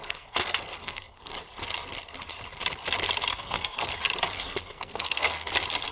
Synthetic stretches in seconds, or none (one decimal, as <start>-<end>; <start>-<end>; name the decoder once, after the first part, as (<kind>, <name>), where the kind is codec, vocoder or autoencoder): 0.0-1.3 (codec, SNAC); 3.3-3.9; 4.3-5.5